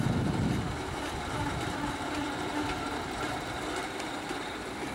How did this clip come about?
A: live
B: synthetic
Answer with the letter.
B